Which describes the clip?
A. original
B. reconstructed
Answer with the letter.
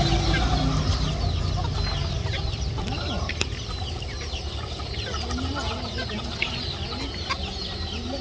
A